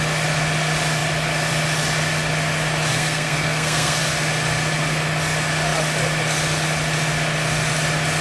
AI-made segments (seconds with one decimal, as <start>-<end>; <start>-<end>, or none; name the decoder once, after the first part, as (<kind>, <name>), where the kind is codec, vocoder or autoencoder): 2.9-4.0 (codec, SNAC)